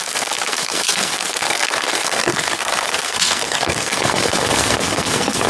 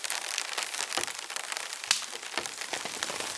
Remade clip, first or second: first